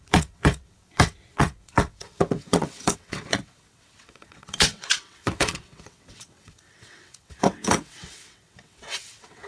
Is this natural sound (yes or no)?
no